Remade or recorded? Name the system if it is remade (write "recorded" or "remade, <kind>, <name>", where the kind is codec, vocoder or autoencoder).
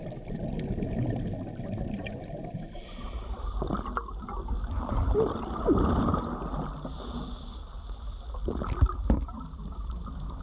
recorded